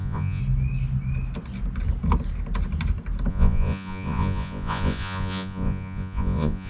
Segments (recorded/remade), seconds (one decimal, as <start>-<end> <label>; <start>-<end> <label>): 0.0-0.4 remade; 0.4-3.3 recorded; 3.3-6.7 remade